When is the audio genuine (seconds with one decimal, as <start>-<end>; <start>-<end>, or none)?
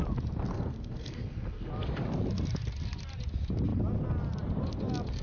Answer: 0.0-0.5; 1.7-5.2